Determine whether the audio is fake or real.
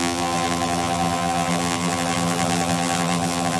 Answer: fake